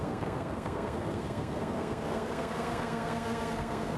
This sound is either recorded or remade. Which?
remade